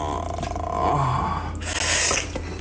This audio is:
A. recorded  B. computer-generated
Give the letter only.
A